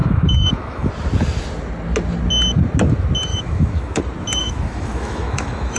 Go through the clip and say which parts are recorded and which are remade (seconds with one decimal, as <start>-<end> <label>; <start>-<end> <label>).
0.0-0.9 remade; 0.9-3.3 recorded; 3.3-4.0 remade; 4.0-4.4 recorded; 4.4-5.8 remade